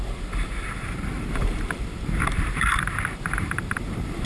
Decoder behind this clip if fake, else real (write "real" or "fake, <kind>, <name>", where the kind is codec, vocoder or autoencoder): fake, vocoder, BigVGAN v2